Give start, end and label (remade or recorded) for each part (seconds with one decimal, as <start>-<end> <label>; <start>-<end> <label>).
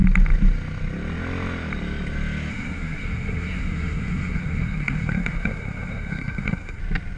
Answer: 0.0-2.5 recorded; 2.5-6.8 remade; 6.8-7.2 recorded